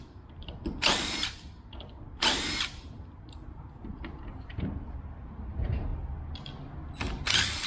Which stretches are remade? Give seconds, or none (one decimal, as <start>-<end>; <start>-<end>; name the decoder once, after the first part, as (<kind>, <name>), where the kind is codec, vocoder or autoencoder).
0.0-5.9 (vocoder, BigVGAN v2)